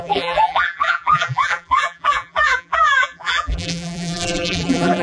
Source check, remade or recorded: remade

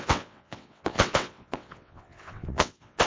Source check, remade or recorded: remade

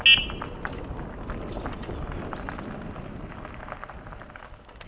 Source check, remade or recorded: recorded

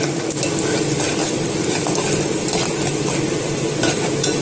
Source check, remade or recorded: recorded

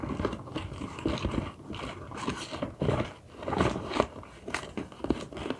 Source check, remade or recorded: recorded